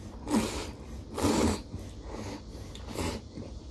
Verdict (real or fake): real